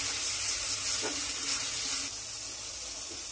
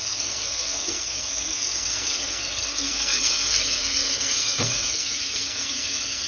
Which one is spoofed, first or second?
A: second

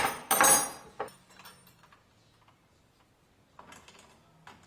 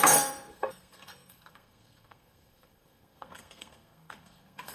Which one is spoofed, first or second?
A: second